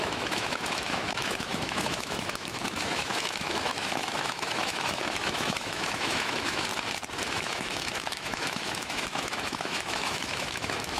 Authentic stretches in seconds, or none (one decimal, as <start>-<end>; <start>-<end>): 6.7-7.3